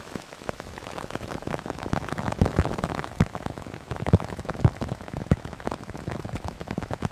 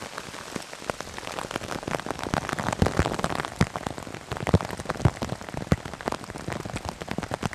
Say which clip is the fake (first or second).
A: first